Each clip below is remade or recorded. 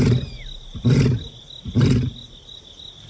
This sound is recorded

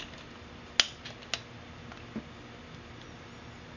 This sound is recorded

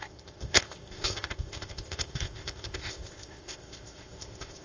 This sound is remade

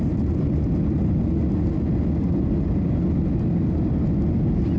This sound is recorded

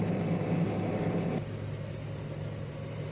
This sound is recorded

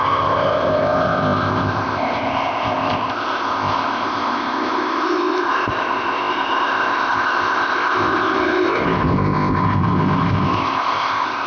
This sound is remade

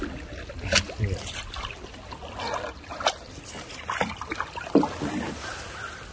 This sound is recorded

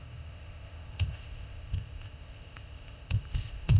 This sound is remade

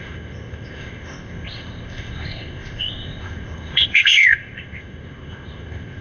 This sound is remade